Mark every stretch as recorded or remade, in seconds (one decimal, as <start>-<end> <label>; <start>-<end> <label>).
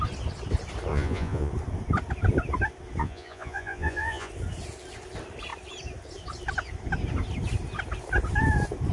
0.0-0.9 recorded; 0.9-1.5 remade; 1.5-3.0 recorded; 3.0-4.3 remade; 4.3-8.9 recorded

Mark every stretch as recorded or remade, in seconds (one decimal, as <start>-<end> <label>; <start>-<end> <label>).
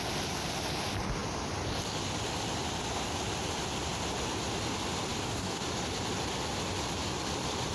0.0-5.1 recorded; 5.1-5.6 remade; 5.6-7.7 recorded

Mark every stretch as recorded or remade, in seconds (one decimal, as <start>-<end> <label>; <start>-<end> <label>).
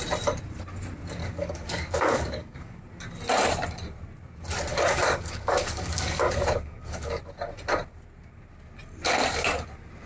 0.0-1.2 recorded; 1.2-2.8 remade; 2.8-4.7 recorded; 4.7-7.2 remade; 7.2-10.1 recorded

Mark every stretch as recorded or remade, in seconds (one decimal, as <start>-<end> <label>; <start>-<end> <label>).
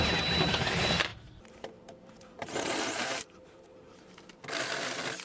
0.0-1.1 recorded; 1.1-4.2 remade; 4.2-5.2 recorded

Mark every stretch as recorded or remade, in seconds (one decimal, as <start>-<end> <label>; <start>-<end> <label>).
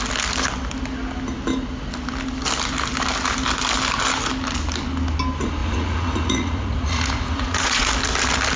0.0-5.6 recorded; 5.6-7.9 remade; 7.9-8.6 recorded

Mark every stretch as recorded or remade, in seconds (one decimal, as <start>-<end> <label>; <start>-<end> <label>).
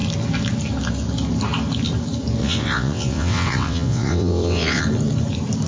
0.0-2.4 recorded; 2.4-4.8 remade; 4.8-5.7 recorded